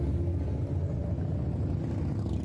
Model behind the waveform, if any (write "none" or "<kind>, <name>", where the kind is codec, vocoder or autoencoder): none